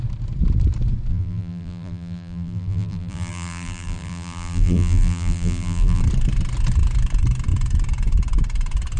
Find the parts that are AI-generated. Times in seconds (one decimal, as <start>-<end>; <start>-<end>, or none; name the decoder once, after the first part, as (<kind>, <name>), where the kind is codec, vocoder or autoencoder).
1.1-6.0 (vocoder, BigVGAN v2)